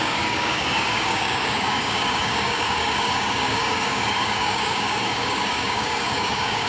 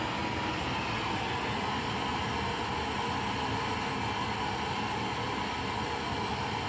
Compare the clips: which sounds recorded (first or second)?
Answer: second